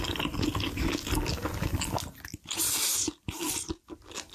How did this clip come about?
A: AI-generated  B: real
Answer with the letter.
B